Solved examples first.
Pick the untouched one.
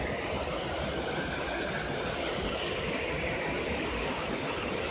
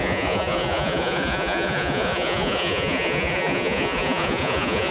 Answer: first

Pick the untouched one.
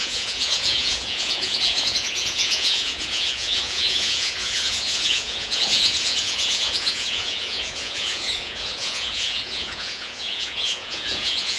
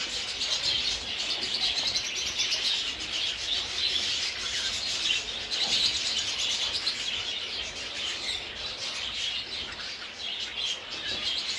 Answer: second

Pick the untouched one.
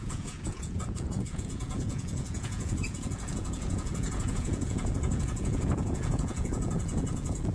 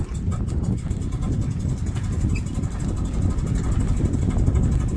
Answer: second